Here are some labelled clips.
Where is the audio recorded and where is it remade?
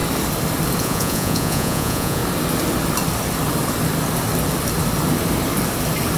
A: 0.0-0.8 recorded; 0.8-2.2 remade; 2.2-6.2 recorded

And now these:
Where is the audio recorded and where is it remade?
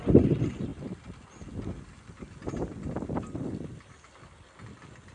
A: 0.0-5.1 recorded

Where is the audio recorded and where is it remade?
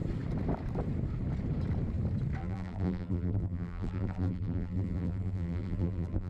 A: 0.0-2.4 recorded; 2.4-6.3 remade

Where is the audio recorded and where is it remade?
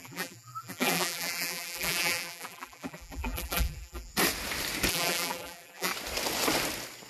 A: 0.0-4.1 remade; 4.1-4.9 recorded; 4.9-5.9 remade; 5.9-7.1 recorded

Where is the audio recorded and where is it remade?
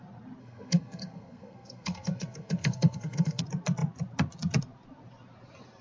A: 0.0-0.4 recorded; 0.4-3.4 remade; 3.4-5.8 recorded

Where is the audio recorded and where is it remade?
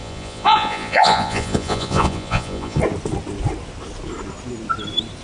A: 0.0-2.8 remade; 2.8-5.2 recorded